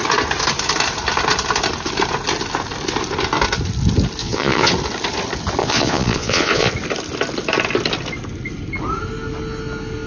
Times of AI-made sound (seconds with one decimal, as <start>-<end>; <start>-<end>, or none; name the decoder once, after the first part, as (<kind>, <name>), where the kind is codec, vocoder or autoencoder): 4.2-4.7 (vocoder, Vocos); 5.6-6.7

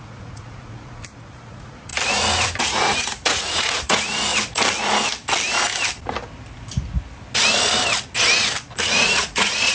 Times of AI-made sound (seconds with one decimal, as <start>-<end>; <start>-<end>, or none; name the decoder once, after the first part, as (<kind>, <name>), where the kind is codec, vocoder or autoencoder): 0.0-1.9 (vocoder, Vocos); 2.6-4.3; 8.8-9.7

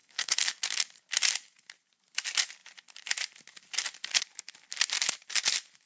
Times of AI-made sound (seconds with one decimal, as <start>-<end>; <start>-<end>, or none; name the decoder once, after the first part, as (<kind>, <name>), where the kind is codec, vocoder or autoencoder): 0.0-0.6 (codec, SNAC)

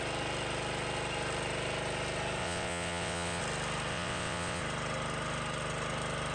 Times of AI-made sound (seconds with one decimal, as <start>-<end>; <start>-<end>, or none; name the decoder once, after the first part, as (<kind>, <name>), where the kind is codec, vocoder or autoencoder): 2.4-3.4 (vocoder, WaveNeXt); 3.9-4.6

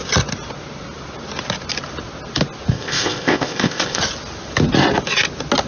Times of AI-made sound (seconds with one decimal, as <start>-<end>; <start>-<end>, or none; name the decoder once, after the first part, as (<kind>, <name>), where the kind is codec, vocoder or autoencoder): 2.7-4.0 (codec, ZipCodec)

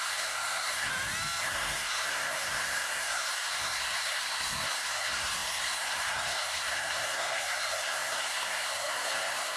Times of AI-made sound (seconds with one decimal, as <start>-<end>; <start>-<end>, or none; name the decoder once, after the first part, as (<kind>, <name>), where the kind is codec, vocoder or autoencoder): 0.0-0.9 (codec, SNAC); 1.4-9.6